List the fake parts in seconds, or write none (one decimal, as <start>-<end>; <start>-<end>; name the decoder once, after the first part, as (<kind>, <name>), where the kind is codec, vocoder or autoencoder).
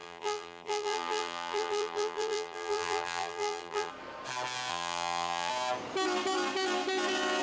0.0-3.9 (vocoder, BigVGAN v2); 4.7-5.5